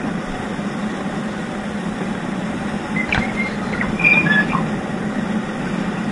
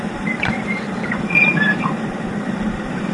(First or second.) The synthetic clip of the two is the second